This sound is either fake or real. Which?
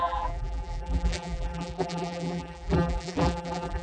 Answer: fake